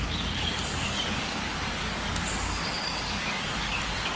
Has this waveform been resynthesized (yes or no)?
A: yes